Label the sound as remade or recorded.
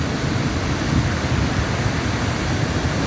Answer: recorded